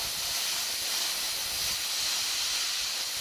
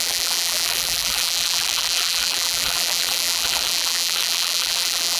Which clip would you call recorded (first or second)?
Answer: first